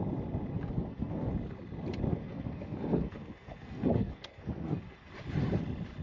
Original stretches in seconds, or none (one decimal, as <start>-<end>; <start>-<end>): 0.0-0.5; 1.3-2.1; 5.1-6.0